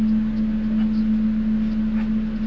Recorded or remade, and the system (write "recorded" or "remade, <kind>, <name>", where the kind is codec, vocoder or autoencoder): recorded